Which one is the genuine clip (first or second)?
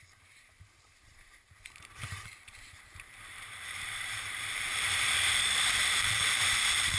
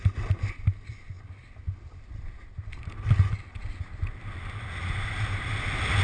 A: second